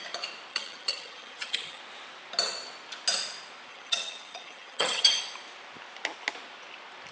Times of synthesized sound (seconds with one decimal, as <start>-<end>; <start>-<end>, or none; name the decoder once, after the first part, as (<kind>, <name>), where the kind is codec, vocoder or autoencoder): 0.5-1.8 (vocoder, HiFi-GAN); 3.7-5.2